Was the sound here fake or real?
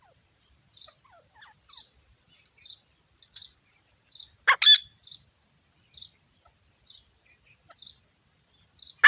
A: real